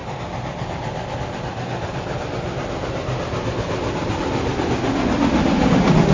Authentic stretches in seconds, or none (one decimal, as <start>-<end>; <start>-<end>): 0.0-6.1